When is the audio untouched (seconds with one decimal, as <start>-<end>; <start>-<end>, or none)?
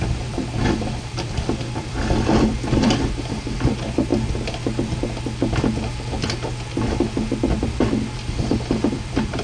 4.1-8.9